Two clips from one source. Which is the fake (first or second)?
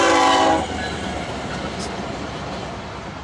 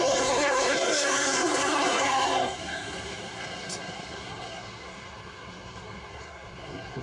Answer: second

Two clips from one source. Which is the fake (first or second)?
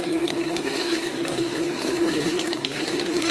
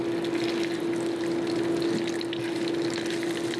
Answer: first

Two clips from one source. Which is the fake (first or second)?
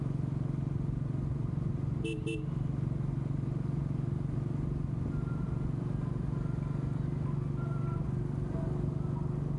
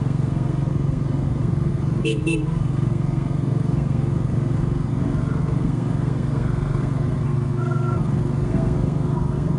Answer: second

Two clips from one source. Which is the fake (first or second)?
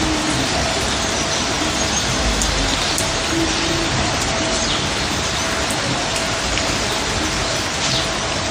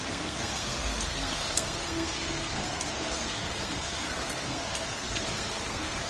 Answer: second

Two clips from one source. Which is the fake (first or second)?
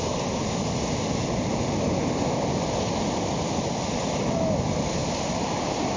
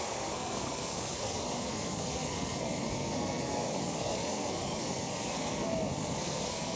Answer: second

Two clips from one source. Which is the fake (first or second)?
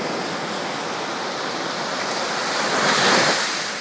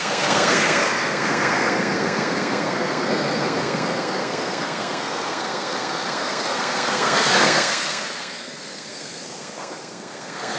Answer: second